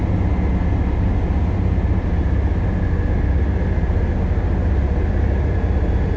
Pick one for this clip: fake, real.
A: real